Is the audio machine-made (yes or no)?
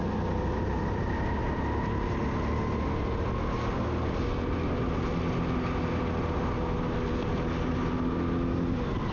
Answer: no